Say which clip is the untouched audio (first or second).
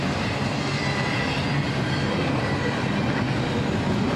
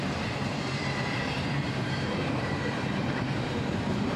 first